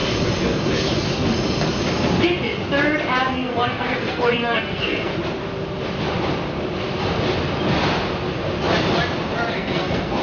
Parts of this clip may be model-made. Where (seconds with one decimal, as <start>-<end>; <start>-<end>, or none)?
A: 3.3-5.1; 9.5-10.2